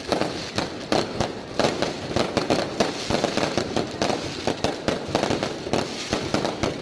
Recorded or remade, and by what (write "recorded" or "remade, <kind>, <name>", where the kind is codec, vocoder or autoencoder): recorded